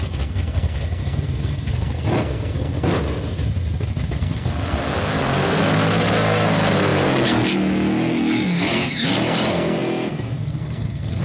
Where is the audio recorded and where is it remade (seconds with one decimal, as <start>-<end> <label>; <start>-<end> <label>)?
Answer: 0.0-2.9 remade; 2.9-4.1 recorded; 4.1-11.2 remade